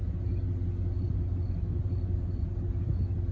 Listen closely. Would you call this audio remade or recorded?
recorded